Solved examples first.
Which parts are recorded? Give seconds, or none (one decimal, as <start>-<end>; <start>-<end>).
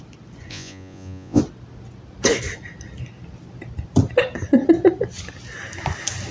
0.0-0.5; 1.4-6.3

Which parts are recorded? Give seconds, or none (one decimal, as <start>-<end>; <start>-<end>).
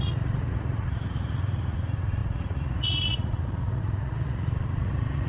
none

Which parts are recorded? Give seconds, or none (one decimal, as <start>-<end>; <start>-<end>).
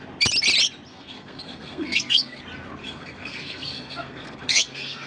0.0-0.9; 2.4-2.8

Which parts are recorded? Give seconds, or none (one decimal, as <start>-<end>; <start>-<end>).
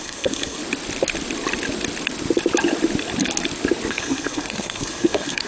0.6-3.9